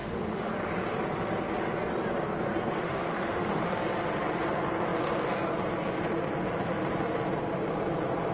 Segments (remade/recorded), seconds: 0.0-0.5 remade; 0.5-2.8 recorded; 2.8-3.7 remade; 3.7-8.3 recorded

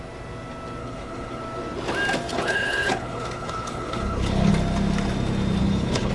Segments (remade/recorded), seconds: 0.0-0.8 recorded; 0.8-1.4 remade; 1.4-2.3 recorded; 2.3-4.5 remade; 4.5-5.6 recorded; 5.6-6.1 remade

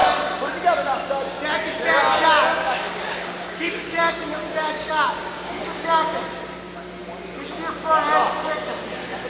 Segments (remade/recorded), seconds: 0.0-2.5 recorded; 2.5-6.2 remade; 6.2-9.3 recorded

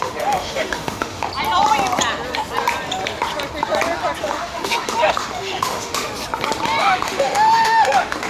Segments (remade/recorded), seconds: 0.0-1.3 remade; 1.3-4.2 recorded; 4.2-6.1 remade; 6.1-6.8 recorded; 6.8-8.3 remade

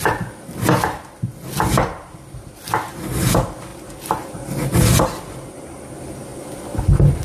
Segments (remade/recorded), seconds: 0.0-7.2 recorded

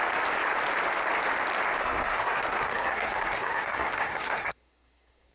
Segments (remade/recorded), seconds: 0.0-1.8 recorded; 1.8-5.3 remade